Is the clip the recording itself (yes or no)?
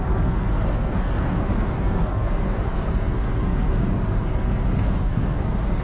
no